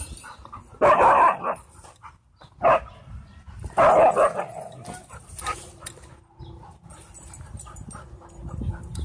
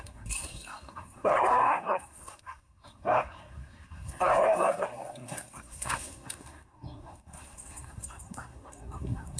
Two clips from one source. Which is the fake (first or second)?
second